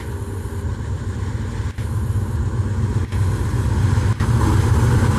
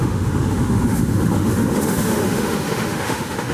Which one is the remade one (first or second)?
second